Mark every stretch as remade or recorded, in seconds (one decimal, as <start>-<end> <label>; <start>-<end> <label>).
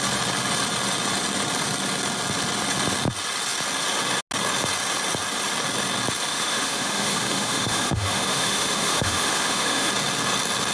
0.0-6.3 recorded; 6.3-9.9 remade; 9.9-10.7 recorded